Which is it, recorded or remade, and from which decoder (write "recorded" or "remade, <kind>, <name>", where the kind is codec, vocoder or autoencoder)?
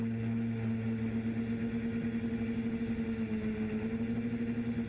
recorded